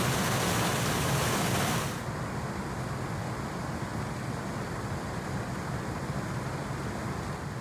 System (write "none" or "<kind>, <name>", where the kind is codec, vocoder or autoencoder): none